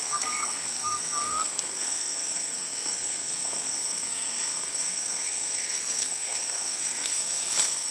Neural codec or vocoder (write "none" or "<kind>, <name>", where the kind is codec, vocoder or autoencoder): codec, SNAC